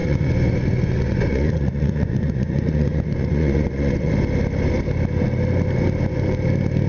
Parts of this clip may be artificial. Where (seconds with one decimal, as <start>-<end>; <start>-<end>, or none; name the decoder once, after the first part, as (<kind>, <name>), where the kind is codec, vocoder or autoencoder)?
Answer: 0.0-4.1 (vocoder, Vocos)